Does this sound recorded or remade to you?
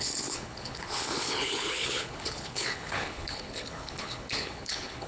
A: remade